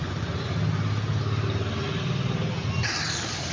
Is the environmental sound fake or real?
real